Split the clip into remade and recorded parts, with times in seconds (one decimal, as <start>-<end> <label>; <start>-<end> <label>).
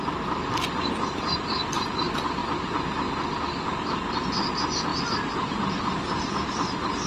0.0-4.9 recorded; 4.9-7.1 remade